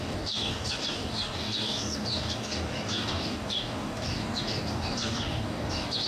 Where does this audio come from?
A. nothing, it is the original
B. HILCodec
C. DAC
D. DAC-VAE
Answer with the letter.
C